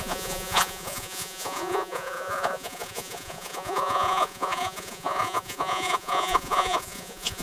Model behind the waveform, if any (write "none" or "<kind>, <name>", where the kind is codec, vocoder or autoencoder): vocoder, Vocos